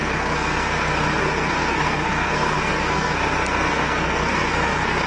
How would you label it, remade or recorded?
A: remade